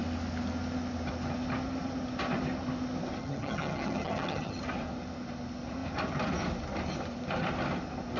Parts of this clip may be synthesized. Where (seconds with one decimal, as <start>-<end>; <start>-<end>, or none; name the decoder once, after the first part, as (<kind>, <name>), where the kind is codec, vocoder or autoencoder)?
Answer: 3.2-4.6 (vocoder, HiFi-GAN)